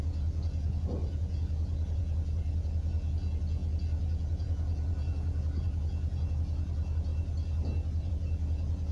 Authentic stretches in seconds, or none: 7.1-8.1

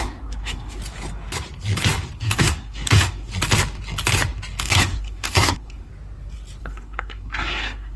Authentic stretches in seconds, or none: 0.8-2.2; 3.3-4.6; 5.9-6.6

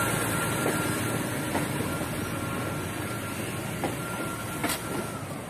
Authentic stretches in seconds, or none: 2.2-3.8; 4.6-5.5

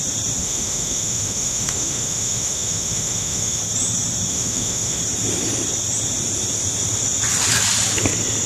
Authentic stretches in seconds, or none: 0.0-0.4; 3.6-4.3; 5.0-8.5